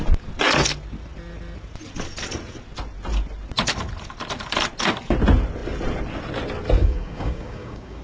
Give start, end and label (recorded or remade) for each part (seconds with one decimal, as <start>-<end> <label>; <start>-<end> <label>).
0.0-6.8 recorded; 6.8-8.0 remade